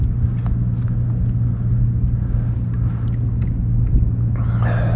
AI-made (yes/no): no